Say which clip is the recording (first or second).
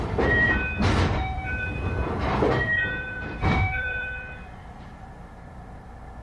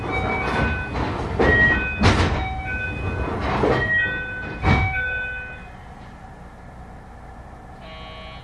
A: second